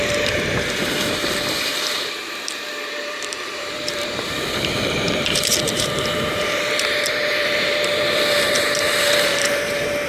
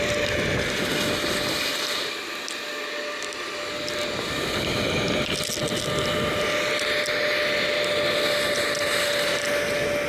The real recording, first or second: second